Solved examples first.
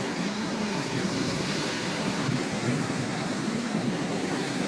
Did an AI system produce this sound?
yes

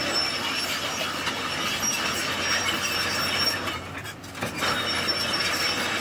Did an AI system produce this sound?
no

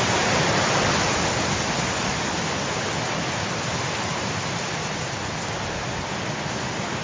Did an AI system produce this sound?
no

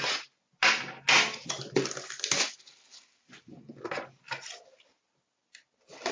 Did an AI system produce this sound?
no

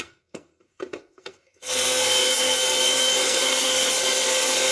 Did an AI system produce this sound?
yes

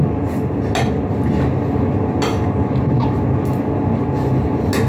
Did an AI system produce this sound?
no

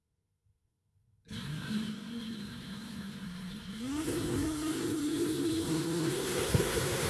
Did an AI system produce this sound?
yes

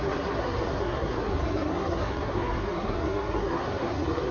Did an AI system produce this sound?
yes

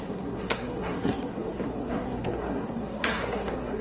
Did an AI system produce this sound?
yes